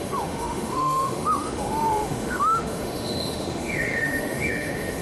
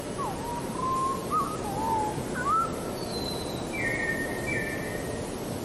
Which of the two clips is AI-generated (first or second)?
first